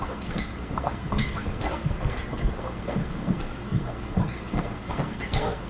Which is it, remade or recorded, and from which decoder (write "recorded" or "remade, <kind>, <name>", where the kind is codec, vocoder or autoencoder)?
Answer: remade, codec, SNAC